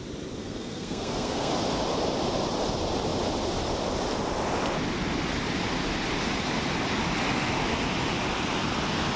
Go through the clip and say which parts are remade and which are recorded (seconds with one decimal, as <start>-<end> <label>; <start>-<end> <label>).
0.0-0.4 recorded; 0.4-1.5 remade; 1.5-9.2 recorded